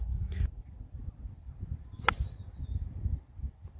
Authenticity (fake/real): real